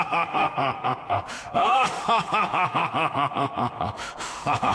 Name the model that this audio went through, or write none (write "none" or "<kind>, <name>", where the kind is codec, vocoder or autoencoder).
autoencoder, DAC-VAE